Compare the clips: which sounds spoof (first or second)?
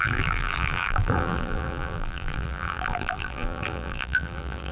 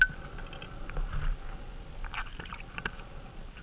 first